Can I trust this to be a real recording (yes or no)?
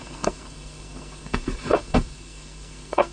no